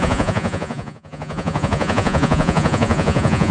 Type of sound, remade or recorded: remade